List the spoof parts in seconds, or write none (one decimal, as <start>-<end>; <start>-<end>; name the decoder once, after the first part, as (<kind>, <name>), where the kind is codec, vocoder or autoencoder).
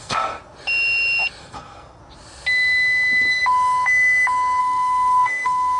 0.0-0.4 (codec, SNAC); 1.4-2.0; 4.6-5.8